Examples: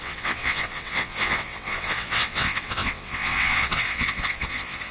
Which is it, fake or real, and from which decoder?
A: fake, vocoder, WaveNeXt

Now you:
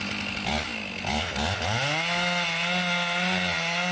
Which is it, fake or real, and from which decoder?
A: real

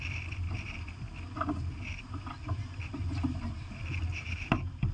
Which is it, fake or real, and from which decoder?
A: fake, vocoder, BigVGAN v2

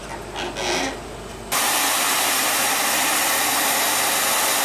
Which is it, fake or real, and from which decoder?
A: real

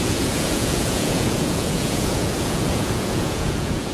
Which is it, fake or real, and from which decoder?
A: fake, vocoder, Vocos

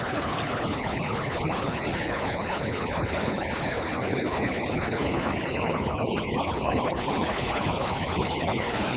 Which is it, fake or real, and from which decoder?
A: fake, codec, HILCodec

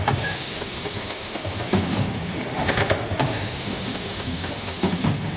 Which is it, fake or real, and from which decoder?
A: fake, autoencoder, DAC-VAE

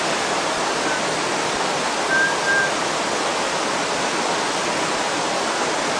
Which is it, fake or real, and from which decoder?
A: real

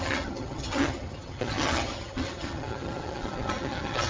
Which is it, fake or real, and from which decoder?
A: fake, vocoder, HiFi-GAN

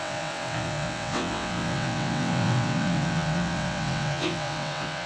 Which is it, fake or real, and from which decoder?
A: fake, vocoder, WaveNeXt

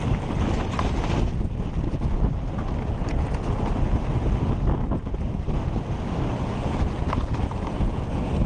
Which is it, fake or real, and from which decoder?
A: real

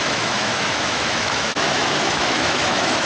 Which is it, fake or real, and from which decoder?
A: fake, autoencoder, DAC-VAE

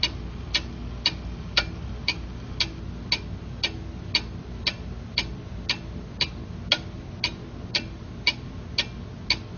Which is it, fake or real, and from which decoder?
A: real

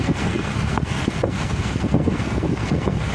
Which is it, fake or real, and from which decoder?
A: fake, codec, SNAC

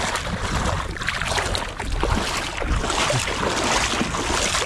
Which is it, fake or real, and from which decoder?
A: real